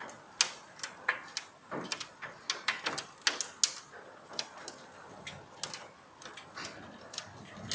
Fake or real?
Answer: real